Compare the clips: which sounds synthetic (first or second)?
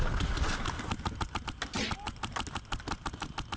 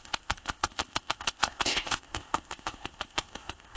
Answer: second